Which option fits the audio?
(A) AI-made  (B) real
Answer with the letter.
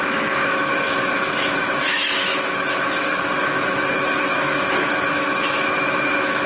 A